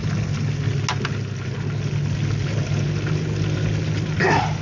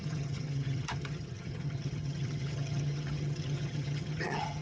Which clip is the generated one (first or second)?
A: second